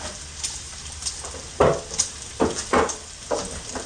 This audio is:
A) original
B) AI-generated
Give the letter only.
A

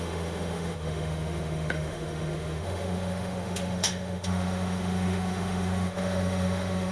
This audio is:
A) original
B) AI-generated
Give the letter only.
B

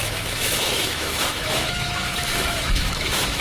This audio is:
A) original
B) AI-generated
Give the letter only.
B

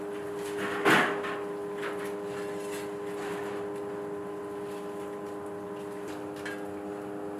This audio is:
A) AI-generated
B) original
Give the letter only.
B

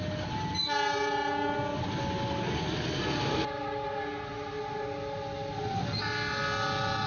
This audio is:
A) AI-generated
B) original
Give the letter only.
B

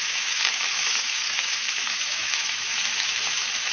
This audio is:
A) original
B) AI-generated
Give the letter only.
B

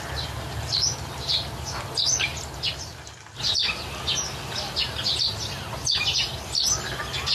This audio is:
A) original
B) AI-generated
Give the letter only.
A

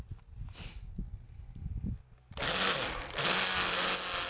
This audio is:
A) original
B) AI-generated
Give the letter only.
A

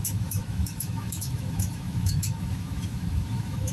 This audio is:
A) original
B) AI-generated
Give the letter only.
B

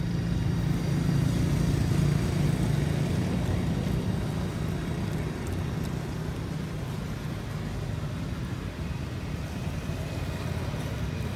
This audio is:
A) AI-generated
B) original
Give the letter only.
B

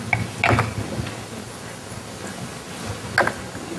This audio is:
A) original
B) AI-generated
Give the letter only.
A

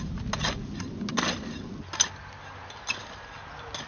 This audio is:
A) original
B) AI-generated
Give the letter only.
A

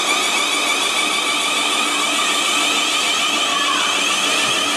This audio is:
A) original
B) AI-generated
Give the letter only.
A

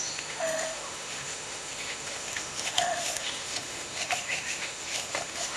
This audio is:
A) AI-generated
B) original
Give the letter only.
A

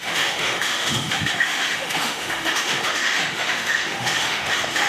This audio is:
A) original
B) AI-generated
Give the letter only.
B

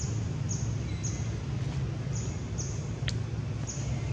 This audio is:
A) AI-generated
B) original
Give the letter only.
B